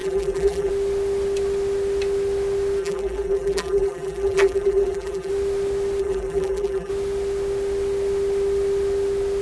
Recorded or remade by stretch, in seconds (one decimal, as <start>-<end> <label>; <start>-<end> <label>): 0.0-0.7 remade; 0.7-2.8 recorded; 2.8-5.3 remade; 5.3-6.0 recorded; 6.0-6.9 remade; 6.9-9.4 recorded